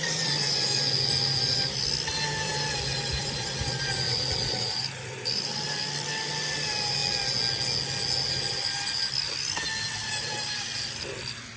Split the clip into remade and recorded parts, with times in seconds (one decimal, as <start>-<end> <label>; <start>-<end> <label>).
0.0-7.0 remade; 7.0-8.2 recorded; 8.2-11.6 remade